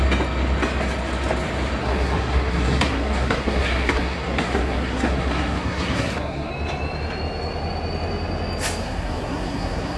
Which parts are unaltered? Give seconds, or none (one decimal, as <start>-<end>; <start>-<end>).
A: 0.0-1.8; 6.5-8.8